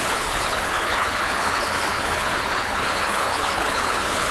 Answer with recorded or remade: remade